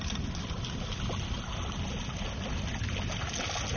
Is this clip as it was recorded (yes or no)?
yes